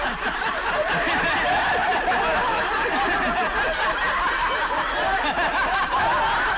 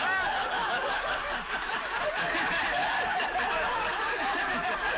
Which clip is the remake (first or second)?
second